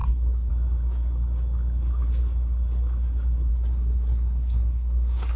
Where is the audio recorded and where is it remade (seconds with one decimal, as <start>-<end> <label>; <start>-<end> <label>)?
0.0-0.5 remade; 0.5-3.5 recorded; 3.5-5.4 remade